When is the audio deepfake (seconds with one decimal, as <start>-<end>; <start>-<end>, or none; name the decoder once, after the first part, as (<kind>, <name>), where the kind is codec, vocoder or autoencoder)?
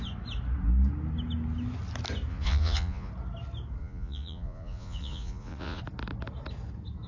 2.3-3.1 (vocoder, Vocos); 3.8-5.8